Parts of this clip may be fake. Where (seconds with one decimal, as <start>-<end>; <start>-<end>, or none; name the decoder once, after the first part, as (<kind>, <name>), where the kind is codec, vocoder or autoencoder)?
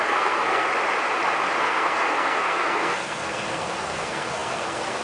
0.0-0.7 (codec, SNAC); 1.6-5.0